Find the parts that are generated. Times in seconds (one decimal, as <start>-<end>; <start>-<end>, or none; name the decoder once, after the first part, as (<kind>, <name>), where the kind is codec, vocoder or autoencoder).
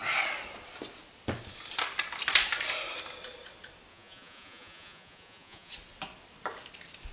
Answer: 3.9-5.7 (vocoder, Vocos)